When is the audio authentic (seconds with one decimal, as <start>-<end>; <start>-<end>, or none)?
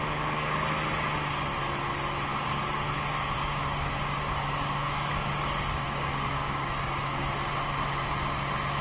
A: 0.0-2.3; 7.5-8.8